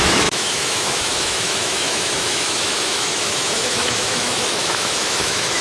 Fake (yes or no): yes